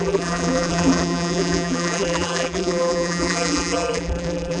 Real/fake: fake